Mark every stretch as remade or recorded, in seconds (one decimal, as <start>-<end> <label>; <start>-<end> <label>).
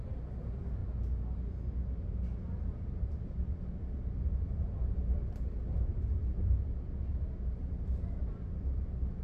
0.0-0.8 remade; 0.8-2.6 recorded; 2.6-5.2 remade; 5.2-8.2 recorded; 8.2-9.2 remade